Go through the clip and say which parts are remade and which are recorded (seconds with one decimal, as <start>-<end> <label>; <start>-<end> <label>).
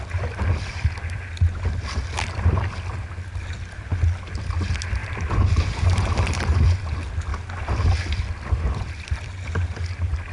0.0-5.0 recorded; 5.0-6.4 remade; 6.4-7.3 recorded; 7.3-7.9 remade; 7.9-10.3 recorded